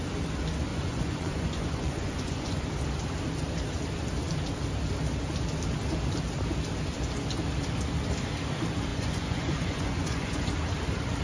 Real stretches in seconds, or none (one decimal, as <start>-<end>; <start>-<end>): 0.0-0.7; 2.6-8.9; 10.5-11.2